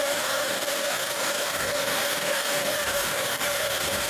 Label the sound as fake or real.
fake